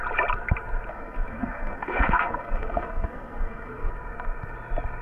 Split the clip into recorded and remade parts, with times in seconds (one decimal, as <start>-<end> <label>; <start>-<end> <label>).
0.0-0.9 recorded; 0.9-3.9 remade; 3.9-5.0 recorded